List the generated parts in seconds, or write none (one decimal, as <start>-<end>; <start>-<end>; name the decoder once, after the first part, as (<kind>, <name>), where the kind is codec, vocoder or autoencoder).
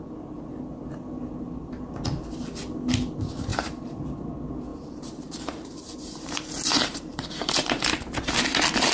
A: 3.5-4.0 (vocoder, BigVGAN v2); 4.7-8.3